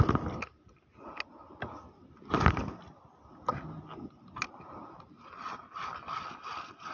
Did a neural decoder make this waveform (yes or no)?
no